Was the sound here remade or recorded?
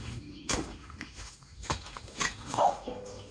remade